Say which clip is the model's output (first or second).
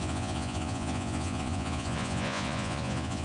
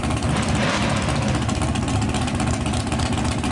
first